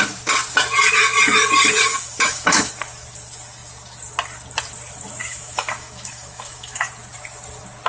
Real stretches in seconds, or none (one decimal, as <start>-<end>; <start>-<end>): 0.0-1.9; 2.7-5.2; 6.9-7.9